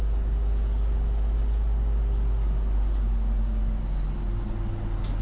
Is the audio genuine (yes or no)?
yes